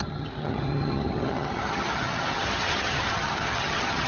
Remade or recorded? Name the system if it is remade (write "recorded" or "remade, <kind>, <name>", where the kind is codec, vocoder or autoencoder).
remade, vocoder, HiFi-GAN